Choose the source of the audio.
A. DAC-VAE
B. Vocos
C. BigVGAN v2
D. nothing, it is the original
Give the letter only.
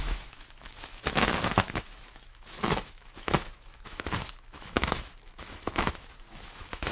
A